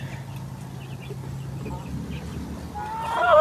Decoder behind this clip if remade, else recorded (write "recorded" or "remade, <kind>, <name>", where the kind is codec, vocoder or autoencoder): recorded